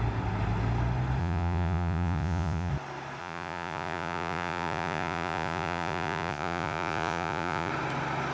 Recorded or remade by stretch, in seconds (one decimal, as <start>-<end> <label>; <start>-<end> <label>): 0.0-1.2 recorded; 1.2-2.7 remade; 2.7-3.2 recorded; 3.2-7.7 remade; 7.7-8.3 recorded